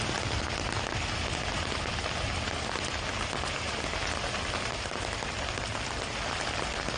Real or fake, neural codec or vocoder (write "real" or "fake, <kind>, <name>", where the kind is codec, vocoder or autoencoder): real